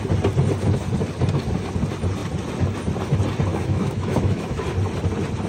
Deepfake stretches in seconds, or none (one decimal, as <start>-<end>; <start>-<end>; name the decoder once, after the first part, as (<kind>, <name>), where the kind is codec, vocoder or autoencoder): 3.5-4.6 (autoencoder, DAC-VAE)